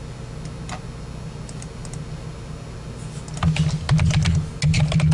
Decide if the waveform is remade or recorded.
recorded